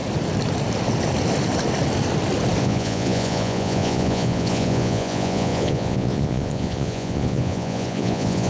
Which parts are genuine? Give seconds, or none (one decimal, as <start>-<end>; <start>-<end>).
0.0-2.6